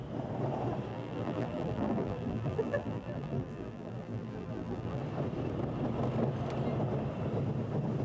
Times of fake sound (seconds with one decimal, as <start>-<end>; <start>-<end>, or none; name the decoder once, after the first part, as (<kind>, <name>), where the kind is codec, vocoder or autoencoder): 0.9-5.0 (vocoder, BigVGAN v2)